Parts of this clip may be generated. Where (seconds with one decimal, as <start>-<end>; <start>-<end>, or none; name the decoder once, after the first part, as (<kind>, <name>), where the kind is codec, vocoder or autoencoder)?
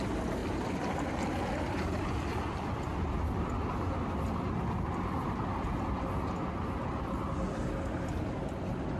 0.4-3.0 (vocoder, BigVGAN v2)